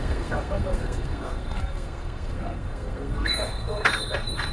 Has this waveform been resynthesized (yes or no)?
yes